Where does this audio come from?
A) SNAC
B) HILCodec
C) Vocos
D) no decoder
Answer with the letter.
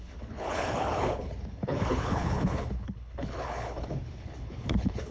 B